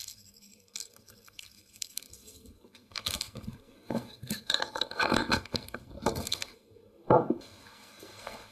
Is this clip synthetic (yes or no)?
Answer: yes